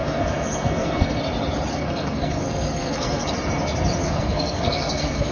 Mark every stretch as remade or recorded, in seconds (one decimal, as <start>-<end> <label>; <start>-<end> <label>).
0.0-1.2 remade; 1.2-1.7 recorded; 1.7-3.3 remade; 3.3-4.0 recorded; 4.0-5.3 remade